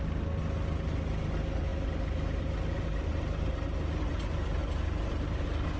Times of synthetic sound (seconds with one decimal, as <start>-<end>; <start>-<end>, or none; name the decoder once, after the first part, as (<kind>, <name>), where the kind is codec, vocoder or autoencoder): none